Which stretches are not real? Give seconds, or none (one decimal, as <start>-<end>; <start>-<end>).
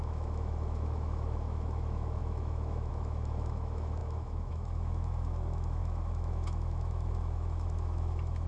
0.0-8.5